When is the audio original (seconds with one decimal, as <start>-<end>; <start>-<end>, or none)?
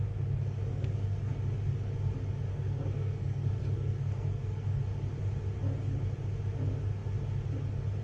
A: 0.0-0.7; 1.3-2.5; 4.8-8.0